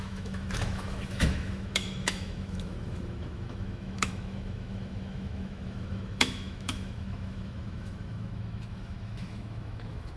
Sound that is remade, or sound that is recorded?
remade